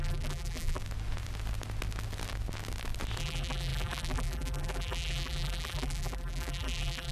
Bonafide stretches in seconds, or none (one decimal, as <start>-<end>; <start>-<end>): 0.8-3.2